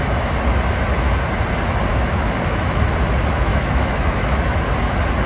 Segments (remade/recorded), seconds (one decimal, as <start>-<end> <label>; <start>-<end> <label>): 0.0-1.9 recorded; 1.9-2.8 remade; 2.8-3.5 recorded; 3.5-4.4 remade; 4.4-5.3 recorded